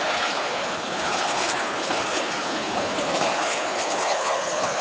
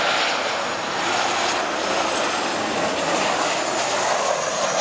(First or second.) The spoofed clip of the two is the first